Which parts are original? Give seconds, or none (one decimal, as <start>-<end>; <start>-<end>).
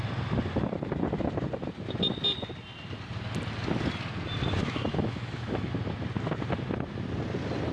0.0-4.6; 5.7-7.7